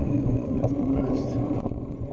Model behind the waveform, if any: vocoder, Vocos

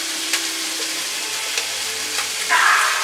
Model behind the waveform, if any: vocoder, BigVGAN v2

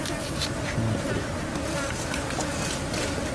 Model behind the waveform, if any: none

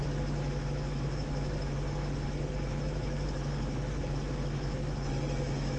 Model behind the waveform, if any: autoencoder, DAC-VAE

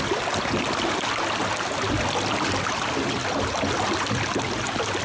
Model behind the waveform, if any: none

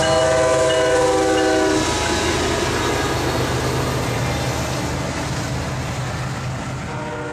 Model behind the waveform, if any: none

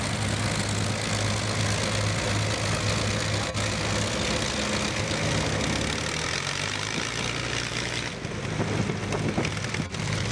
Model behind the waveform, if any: none